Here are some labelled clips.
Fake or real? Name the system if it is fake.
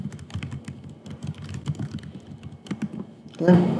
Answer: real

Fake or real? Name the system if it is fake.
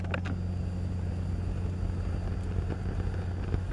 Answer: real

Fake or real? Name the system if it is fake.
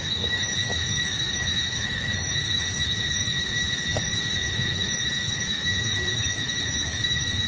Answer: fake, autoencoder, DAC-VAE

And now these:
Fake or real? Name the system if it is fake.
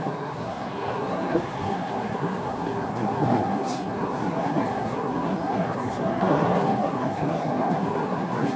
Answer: fake, codec, SNAC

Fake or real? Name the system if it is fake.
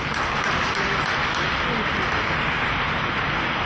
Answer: real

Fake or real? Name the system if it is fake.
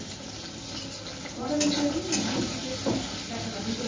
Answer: real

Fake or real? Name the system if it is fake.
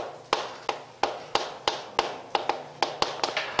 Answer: real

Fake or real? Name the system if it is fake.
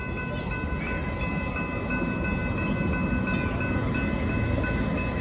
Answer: real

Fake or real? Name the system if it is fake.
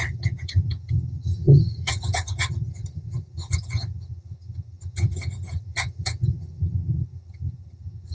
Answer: fake, vocoder, HiFi-GAN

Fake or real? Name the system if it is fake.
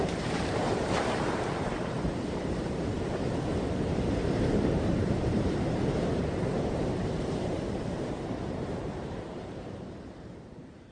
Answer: fake, vocoder, BigVGAN v2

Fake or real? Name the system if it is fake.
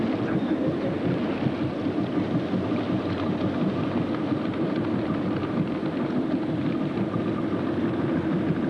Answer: real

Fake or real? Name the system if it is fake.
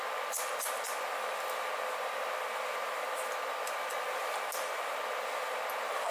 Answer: real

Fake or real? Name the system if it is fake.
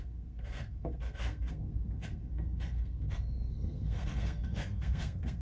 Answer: fake, codec, SNAC